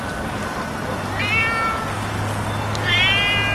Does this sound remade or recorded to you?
recorded